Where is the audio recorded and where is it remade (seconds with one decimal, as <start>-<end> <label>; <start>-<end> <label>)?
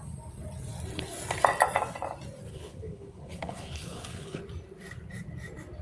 0.0-2.5 recorded; 2.5-4.4 remade; 4.4-5.8 recorded